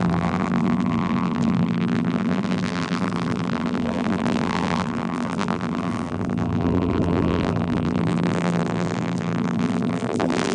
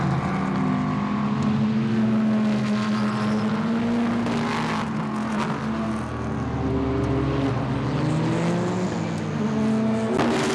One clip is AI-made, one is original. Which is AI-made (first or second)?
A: first